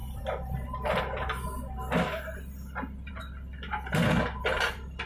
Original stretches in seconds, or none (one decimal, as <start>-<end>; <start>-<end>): 0.0-5.1